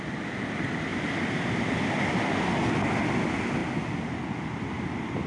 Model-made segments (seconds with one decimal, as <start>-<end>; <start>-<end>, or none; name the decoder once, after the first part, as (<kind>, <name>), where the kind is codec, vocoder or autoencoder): none